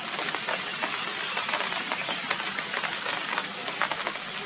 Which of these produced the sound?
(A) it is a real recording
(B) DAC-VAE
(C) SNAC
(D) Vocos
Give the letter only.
A